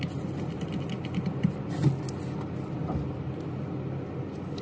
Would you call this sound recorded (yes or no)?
yes